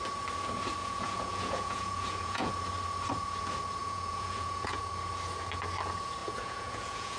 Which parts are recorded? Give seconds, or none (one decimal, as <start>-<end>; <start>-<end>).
0.0-0.8; 2.5-3.8; 4.9-6.2